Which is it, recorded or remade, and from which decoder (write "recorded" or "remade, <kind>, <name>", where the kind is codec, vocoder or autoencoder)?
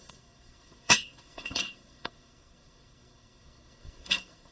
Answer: remade, codec, SNAC